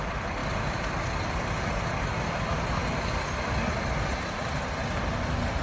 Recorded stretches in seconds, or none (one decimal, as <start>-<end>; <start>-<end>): 0.0-5.6